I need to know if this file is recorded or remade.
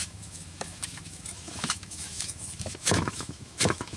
remade